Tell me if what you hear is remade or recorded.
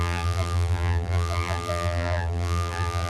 remade